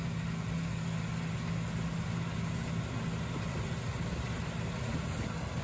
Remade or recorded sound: recorded